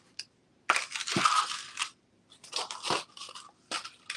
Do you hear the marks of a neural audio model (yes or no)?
no